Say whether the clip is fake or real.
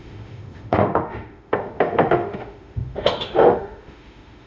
fake